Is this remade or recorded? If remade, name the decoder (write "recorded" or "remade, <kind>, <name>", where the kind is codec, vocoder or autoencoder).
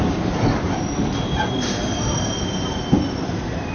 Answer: recorded